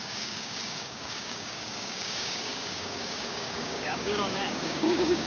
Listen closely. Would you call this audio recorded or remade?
remade